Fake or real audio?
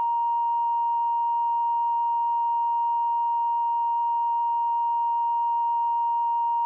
real